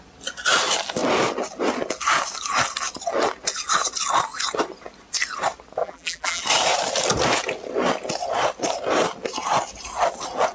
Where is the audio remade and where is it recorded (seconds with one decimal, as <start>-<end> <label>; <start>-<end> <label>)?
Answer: 0.0-5.8 recorded; 5.8-6.4 remade; 6.4-10.5 recorded